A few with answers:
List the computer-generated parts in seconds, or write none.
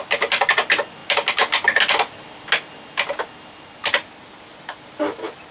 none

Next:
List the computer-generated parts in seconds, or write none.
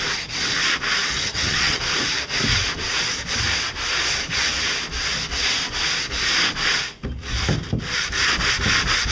1.1-1.8 (vocoder, HiFi-GAN)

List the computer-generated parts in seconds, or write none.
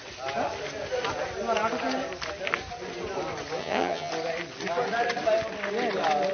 3.6-4.1 (vocoder, HiFi-GAN)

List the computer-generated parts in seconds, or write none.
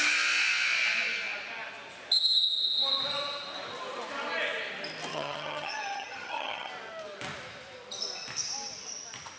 5.1-6.7 (vocoder, HiFi-GAN)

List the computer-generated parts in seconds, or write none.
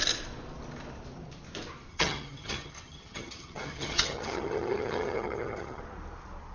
1.9-5.8 (vocoder, HiFi-GAN)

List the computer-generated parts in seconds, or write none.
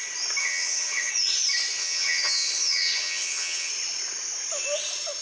0.4-1.1 (vocoder, HiFi-GAN); 1.8-3.7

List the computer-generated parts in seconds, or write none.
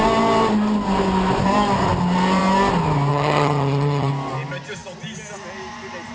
3.1-4.1 (vocoder, HiFi-GAN)